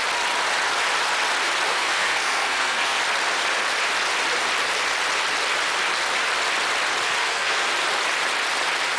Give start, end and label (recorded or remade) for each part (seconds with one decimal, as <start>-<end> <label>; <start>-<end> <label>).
0.0-1.7 recorded; 1.7-3.0 remade; 3.0-7.2 recorded; 7.2-7.7 remade; 7.7-9.0 recorded